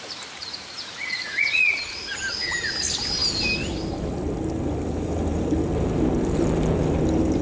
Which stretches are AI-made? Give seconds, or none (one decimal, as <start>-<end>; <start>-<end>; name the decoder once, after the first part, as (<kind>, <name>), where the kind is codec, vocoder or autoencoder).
0.4-1.7 (vocoder, Vocos)